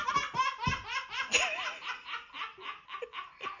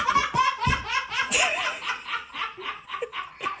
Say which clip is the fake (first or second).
second